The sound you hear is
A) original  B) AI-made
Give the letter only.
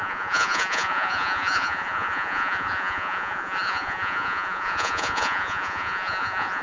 B